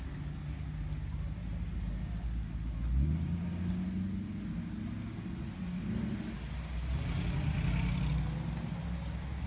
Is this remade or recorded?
recorded